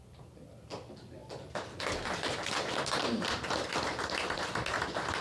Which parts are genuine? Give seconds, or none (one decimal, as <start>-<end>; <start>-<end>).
0.0-5.2